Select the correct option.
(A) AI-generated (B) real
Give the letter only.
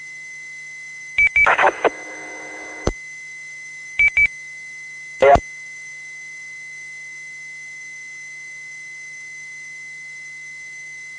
A